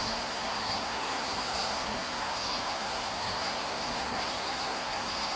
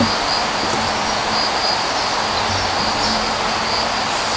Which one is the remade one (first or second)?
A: first